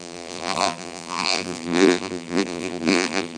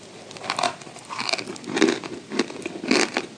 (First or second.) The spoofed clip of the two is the first